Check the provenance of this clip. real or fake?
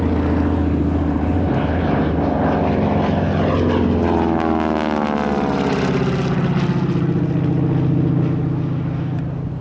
real